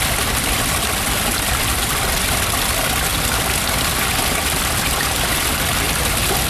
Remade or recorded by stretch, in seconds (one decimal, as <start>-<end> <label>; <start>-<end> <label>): 0.0-6.5 recorded